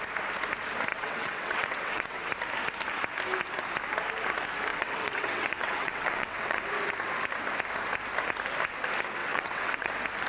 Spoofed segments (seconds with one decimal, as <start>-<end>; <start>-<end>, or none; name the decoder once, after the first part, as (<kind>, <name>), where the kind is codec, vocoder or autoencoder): 0.9-2.3 (vocoder, WaveNeXt); 4.7-6.6; 9.2-9.9